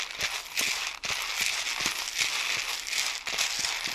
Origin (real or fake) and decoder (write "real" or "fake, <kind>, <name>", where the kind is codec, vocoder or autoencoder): real